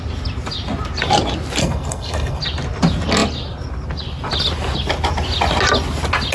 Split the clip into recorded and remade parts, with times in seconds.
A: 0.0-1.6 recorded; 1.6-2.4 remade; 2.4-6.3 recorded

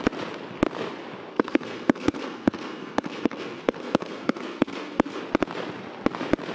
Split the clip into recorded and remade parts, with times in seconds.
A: 0.0-1.3 recorded; 1.3-5.2 remade; 5.2-6.5 recorded

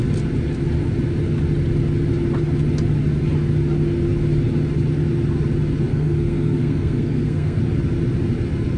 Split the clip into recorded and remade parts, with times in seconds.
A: 0.0-5.9 recorded; 5.9-7.6 remade; 7.6-8.8 recorded

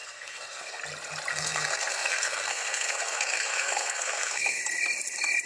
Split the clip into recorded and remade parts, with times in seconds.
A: 0.0-0.8 remade; 0.8-1.3 recorded; 1.3-4.6 remade; 4.6-5.5 recorded

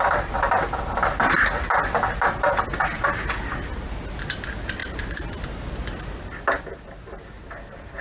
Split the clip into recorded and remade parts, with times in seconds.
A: 0.0-8.0 recorded

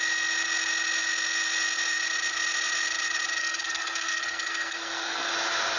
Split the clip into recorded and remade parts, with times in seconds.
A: 0.0-3.4 recorded; 3.4-5.3 remade; 5.3-5.8 recorded

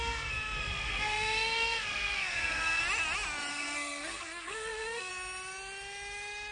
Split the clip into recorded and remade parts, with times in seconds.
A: 0.0-2.8 remade; 2.8-3.5 recorded; 3.5-5.1 remade; 5.1-6.5 recorded

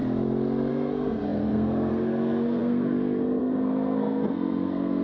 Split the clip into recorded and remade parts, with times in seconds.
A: 0.0-0.7 recorded; 0.7-5.0 remade